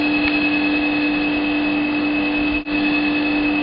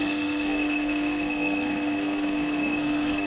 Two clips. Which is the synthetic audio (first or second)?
second